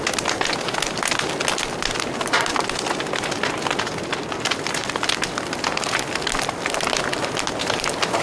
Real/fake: real